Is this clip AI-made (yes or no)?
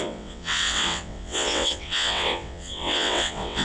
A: yes